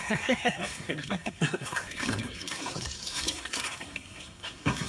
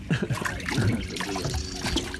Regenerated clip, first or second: first